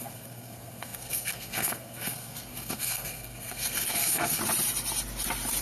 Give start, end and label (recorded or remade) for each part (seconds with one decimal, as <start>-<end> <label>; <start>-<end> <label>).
0.0-4.4 remade; 4.4-5.6 recorded